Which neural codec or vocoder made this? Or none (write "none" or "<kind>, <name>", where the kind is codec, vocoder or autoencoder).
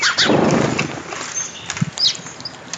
none